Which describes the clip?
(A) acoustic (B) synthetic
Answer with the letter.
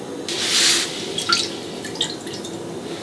A